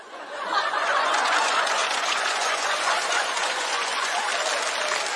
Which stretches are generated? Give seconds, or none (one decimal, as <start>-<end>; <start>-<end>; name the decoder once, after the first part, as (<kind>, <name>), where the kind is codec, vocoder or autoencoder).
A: 0.0-4.3 (vocoder, Vocos)